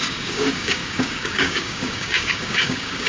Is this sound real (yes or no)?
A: no